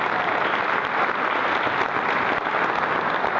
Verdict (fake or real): real